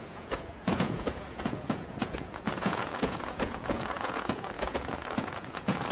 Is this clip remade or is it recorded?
remade